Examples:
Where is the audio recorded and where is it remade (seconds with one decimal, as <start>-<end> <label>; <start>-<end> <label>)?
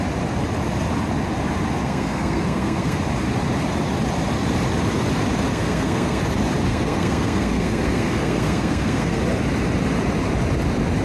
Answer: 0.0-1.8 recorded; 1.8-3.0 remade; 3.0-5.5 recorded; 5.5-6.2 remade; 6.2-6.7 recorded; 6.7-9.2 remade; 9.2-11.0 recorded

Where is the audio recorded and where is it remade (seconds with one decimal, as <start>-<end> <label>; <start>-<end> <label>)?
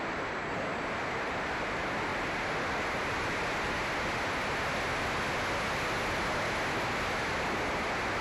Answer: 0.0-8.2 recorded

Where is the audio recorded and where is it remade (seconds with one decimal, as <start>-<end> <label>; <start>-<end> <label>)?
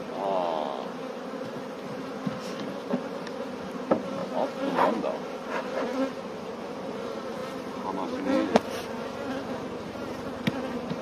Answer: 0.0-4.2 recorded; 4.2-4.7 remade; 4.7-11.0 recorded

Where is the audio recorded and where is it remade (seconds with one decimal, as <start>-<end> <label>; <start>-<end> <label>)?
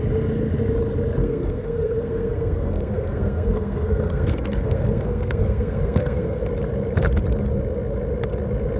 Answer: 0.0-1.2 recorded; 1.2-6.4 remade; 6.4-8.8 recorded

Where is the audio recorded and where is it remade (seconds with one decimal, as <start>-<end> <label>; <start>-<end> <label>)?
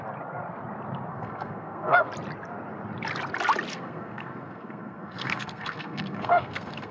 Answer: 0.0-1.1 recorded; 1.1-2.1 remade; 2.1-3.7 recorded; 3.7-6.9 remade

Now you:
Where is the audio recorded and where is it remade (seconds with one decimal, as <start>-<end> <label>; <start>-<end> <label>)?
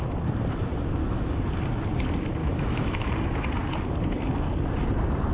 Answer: 0.0-1.0 recorded; 1.0-1.5 remade; 1.5-2.4 recorded; 2.4-3.1 remade; 3.1-5.3 recorded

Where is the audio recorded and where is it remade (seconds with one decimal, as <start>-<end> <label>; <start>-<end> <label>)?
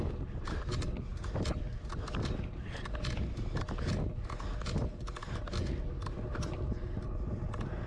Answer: 0.0-7.9 recorded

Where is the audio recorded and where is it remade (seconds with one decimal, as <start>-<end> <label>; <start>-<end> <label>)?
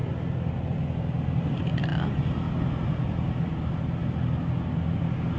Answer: 0.0-5.4 recorded